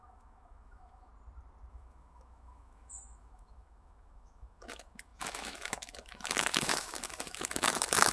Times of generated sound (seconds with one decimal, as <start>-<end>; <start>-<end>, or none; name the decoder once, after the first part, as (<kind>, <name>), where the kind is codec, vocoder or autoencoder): 0.0-1.1 (autoencoder, DAC-VAE); 1.7-8.1